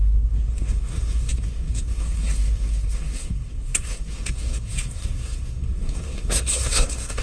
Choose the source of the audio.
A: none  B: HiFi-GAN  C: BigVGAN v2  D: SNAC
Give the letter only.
D